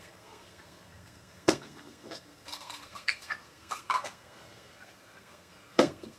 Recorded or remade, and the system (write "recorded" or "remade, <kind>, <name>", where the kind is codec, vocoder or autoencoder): remade, codec, SNAC